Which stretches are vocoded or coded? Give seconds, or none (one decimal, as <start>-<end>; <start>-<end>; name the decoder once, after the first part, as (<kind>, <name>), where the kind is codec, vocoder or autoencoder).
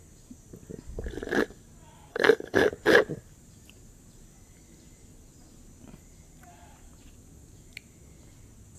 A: 2.1-2.7 (codec, SNAC)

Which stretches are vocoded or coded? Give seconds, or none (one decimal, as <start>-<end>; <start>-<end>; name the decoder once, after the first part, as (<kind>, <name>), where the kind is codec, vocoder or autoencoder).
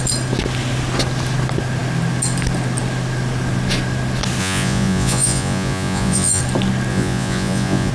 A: 4.4-6.4 (vocoder, Vocos); 6.9-7.9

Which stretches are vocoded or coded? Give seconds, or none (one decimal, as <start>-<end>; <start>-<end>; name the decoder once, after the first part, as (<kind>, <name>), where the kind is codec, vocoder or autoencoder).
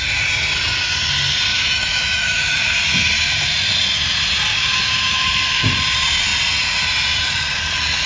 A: 1.5-2.5 (autoencoder, DAC-VAE); 4.5-5.7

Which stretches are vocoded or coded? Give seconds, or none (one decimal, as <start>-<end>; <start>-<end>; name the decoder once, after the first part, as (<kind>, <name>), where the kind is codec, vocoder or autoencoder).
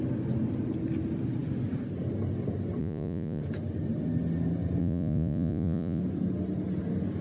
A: 2.8-3.4 (vocoder, Vocos); 4.8-6.0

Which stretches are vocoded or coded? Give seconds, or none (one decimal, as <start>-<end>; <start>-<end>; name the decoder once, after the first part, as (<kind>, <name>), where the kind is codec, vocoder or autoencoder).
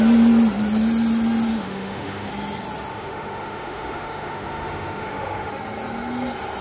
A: 1.5-2.3 (autoencoder, DAC-VAE); 2.9-5.5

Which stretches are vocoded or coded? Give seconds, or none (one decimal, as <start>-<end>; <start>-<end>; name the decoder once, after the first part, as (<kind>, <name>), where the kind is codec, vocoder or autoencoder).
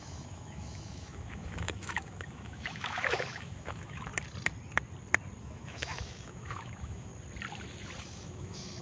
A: 0.0-4.1 (autoencoder, DAC-VAE); 5.4-7.1; 8.0-8.8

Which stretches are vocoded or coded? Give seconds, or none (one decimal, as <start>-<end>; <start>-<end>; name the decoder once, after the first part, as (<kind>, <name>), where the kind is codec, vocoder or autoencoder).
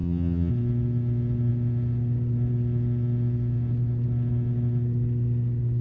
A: 0.0-0.5 (vocoder, HiFi-GAN)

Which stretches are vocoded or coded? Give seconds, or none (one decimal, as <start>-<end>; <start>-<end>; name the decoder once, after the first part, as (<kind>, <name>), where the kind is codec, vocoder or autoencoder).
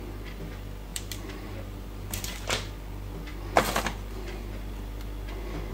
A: 0.9-2.7 (vocoder, BigVGAN v2)